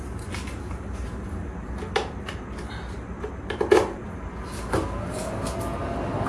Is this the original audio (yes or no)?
yes